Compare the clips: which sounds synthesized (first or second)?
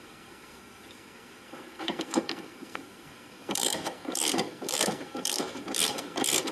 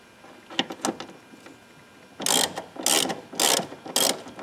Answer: first